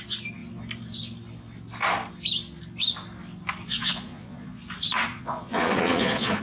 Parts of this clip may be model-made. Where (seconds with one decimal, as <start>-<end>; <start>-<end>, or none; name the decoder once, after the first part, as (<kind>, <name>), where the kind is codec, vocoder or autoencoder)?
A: 3.7-4.6 (vocoder, Vocos); 5.1-6.4

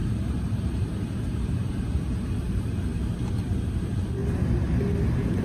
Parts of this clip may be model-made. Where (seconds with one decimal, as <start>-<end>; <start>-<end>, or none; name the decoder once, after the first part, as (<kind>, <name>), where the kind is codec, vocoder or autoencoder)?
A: 0.0-2.9 (vocoder, BigVGAN v2); 3.7-4.2

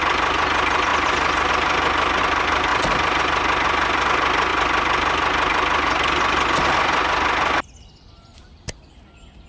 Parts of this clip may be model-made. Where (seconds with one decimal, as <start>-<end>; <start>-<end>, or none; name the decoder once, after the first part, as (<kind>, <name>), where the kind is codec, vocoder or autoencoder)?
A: 0.9-1.5 (vocoder, BigVGAN v2); 2.7-3.2

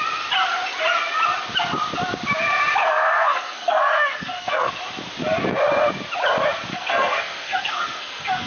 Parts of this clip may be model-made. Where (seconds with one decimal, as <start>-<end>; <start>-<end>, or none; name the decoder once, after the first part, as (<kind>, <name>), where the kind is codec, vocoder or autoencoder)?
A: 2.8-4.7 (codec, SNAC); 6.7-8.5

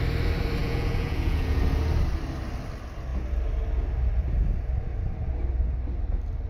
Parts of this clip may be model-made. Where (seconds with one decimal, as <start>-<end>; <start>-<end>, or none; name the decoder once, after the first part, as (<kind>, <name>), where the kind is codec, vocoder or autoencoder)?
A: 0.6-1.6 (vocoder, Vocos)